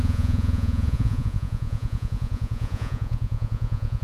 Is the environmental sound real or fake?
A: fake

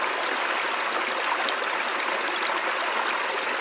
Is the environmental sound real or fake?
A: real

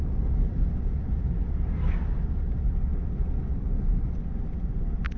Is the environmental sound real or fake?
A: real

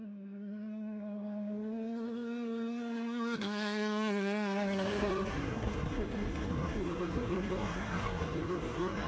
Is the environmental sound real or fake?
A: fake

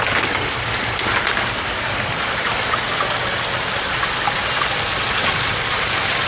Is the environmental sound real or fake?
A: real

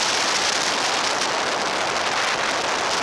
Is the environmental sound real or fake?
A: real